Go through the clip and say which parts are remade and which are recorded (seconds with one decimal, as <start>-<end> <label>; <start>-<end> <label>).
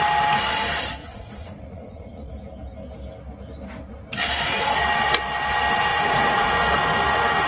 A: 0.0-1.0 recorded; 1.0-2.3 remade; 2.3-5.9 recorded; 5.9-6.5 remade; 6.5-7.5 recorded